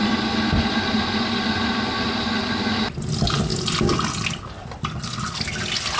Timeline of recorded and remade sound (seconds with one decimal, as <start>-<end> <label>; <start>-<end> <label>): 0.0-6.0 recorded